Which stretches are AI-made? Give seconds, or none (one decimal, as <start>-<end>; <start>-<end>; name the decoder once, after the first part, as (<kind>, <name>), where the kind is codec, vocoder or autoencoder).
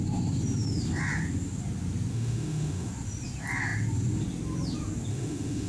2.1-2.9 (autoencoder, DAC-VAE); 5.1-5.7